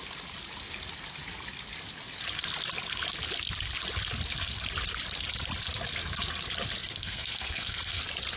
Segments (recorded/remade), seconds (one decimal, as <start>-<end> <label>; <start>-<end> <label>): 0.0-6.8 recorded; 6.8-8.0 remade; 8.0-8.4 recorded